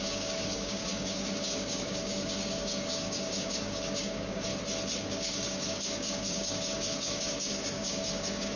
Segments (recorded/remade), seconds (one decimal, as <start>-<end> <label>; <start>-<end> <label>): 0.0-4.5 remade; 4.5-5.0 recorded; 5.0-8.6 remade

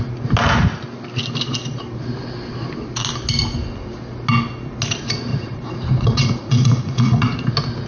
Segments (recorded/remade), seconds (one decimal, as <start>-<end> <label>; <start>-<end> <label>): 0.0-5.3 recorded; 5.3-7.5 remade; 7.5-7.9 recorded

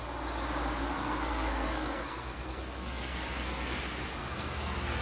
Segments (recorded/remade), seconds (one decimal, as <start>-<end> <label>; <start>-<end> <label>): 0.0-0.8 recorded; 0.8-3.8 remade; 3.8-4.2 recorded; 4.2-5.0 remade

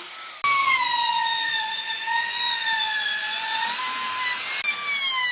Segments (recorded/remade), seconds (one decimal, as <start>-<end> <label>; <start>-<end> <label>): 0.0-0.6 recorded; 0.6-3.8 remade; 3.8-5.3 recorded

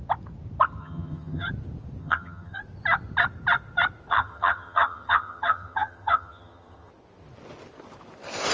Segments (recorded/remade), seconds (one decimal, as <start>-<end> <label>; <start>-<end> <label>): 0.0-0.8 recorded; 0.8-1.5 remade; 1.5-2.0 recorded; 2.0-2.6 remade; 2.6-4.1 recorded; 4.1-6.9 remade; 6.9-8.5 recorded